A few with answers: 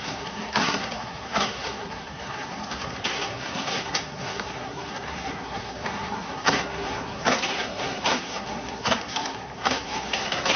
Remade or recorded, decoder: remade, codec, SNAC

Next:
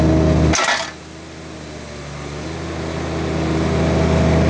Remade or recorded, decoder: recorded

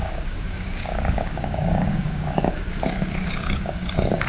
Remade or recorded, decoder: remade, codec, DAC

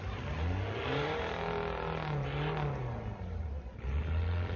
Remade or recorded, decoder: recorded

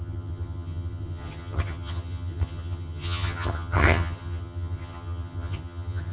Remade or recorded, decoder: remade, vocoder, HiFi-GAN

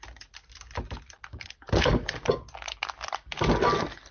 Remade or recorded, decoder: recorded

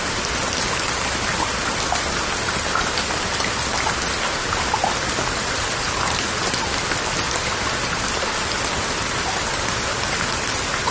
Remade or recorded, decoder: recorded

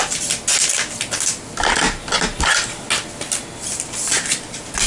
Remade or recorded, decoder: recorded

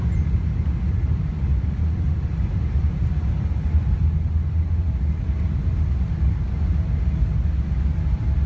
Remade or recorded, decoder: recorded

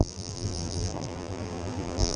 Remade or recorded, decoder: remade, vocoder, BigVGAN v2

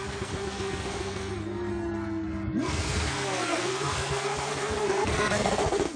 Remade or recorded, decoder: remade, codec, SNAC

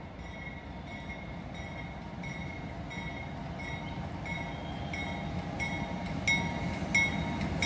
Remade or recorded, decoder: recorded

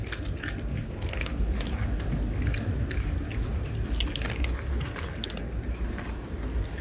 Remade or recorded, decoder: recorded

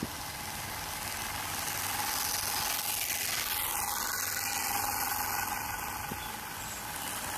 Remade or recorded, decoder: recorded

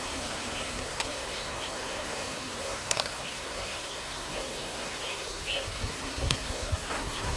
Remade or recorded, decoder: remade, codec, SNAC